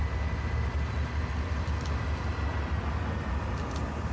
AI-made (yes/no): no